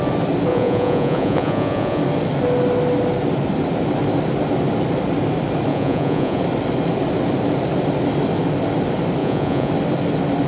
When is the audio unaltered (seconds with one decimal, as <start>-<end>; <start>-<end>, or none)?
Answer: 0.0-0.5; 2.0-5.7; 6.4-9.2; 9.7-10.5